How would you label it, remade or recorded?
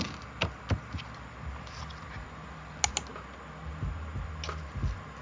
recorded